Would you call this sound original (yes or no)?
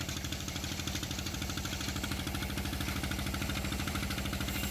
no